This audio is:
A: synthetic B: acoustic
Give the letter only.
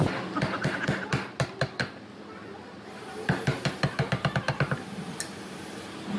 B